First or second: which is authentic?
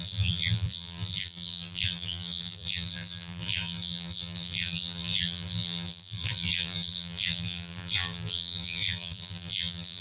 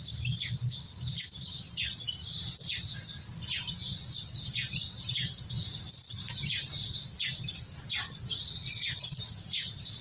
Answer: second